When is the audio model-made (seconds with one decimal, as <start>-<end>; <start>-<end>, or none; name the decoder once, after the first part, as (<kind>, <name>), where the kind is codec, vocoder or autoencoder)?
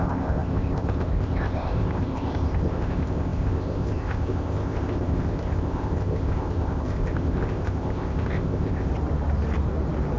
0.0-8.9 (codec, ZipCodec)